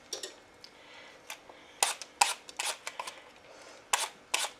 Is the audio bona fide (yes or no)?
yes